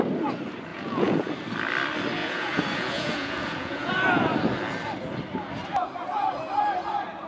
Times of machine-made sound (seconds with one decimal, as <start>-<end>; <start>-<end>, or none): 0.7-1.3; 2.2-3.9